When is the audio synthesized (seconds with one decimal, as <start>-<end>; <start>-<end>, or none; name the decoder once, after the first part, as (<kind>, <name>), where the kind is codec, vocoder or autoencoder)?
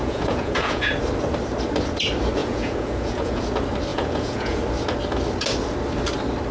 0.0-0.9 (vocoder, Vocos); 2.4-3.4; 3.9-4.6